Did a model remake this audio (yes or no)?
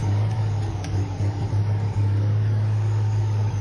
yes